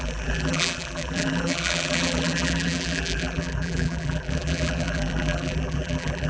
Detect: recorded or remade remade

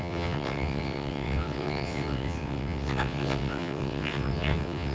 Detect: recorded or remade remade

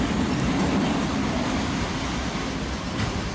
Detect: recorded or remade recorded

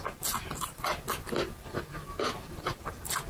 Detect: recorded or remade recorded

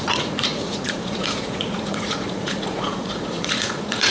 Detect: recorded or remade remade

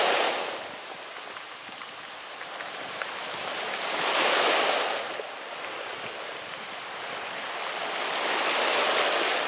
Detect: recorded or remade recorded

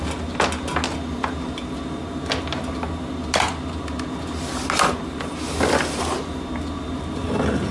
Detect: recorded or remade recorded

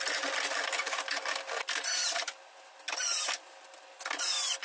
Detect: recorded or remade recorded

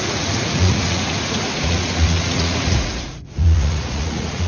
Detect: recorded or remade remade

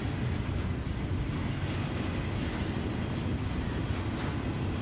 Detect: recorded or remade recorded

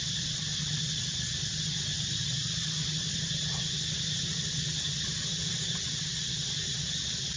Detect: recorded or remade recorded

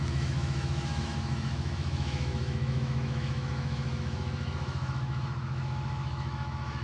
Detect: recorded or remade remade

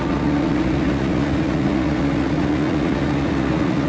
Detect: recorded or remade remade